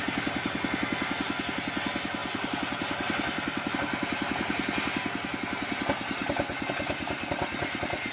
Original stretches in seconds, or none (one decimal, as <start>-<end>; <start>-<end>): 0.0-8.1